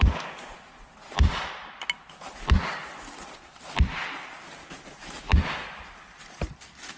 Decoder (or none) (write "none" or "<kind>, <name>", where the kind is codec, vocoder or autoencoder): none